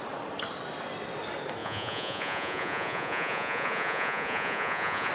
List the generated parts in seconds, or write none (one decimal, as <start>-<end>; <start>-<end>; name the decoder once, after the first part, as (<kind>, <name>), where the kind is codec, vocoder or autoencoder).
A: 1.6-5.1 (vocoder, Vocos)